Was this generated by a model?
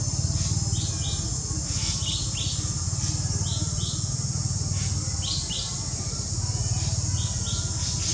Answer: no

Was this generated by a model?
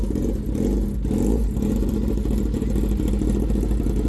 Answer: no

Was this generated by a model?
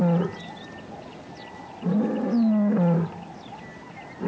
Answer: no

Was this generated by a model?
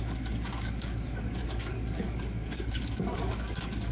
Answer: yes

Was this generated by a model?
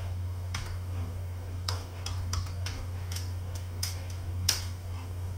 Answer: yes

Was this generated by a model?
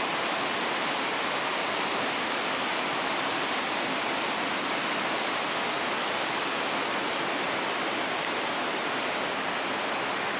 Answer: no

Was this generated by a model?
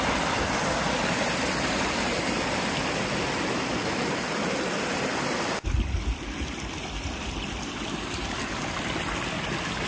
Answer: no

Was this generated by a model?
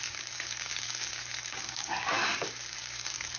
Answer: yes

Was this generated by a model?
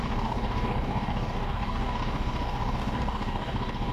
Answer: yes